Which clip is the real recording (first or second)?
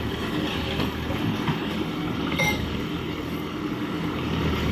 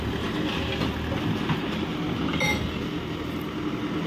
second